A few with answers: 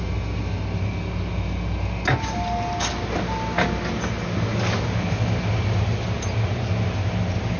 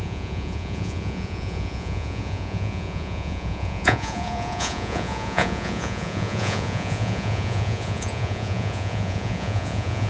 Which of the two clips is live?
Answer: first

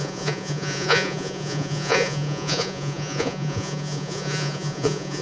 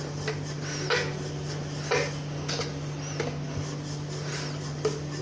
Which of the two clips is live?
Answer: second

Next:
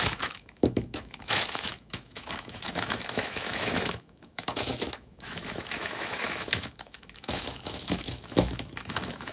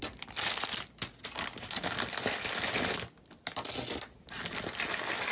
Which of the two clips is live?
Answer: second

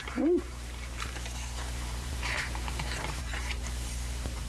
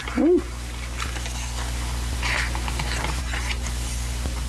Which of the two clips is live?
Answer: second